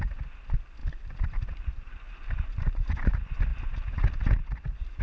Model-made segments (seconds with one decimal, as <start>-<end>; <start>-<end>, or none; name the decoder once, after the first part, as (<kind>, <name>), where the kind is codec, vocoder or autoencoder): 0.8-3.1 (vocoder, BigVGAN v2)